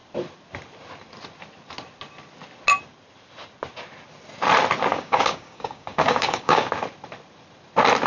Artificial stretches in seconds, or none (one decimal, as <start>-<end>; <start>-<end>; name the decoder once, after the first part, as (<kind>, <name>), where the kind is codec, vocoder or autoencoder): 4.9-6.7 (codec, DAC)